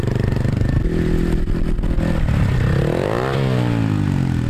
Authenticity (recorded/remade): recorded